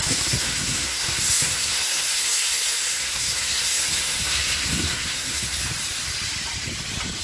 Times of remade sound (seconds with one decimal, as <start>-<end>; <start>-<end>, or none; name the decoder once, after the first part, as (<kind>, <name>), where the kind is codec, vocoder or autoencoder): 0.0-5.6 (codec, SNAC)